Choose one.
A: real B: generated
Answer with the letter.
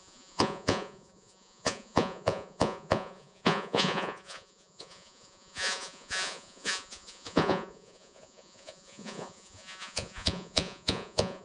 B